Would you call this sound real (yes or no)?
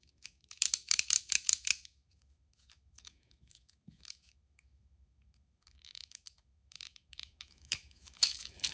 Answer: no